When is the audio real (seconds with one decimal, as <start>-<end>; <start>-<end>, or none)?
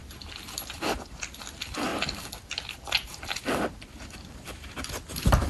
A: 1.4-1.9